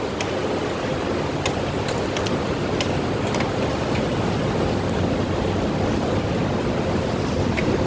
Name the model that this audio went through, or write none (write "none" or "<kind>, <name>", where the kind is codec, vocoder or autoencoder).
none